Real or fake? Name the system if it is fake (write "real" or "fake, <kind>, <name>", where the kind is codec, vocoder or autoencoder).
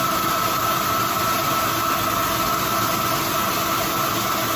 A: real